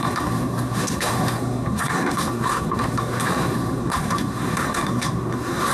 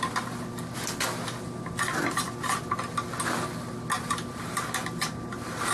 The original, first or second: second